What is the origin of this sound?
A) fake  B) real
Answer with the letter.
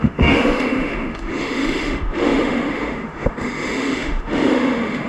A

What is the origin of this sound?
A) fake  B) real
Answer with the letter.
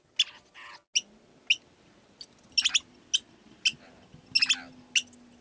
B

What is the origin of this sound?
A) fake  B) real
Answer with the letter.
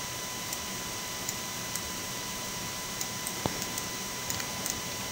A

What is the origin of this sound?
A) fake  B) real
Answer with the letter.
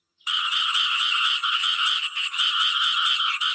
A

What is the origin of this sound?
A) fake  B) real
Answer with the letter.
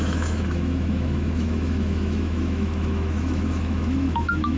A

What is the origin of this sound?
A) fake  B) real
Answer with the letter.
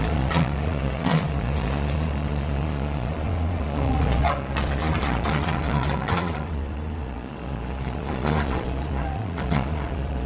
A